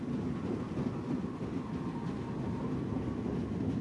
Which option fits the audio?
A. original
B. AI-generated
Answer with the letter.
A